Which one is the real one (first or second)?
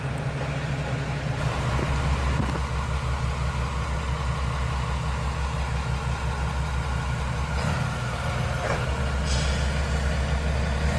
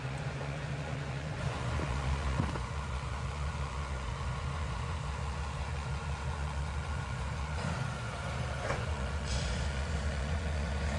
first